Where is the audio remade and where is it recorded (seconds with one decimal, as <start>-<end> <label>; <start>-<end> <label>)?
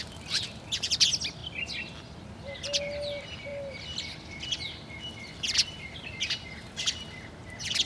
0.0-7.9 recorded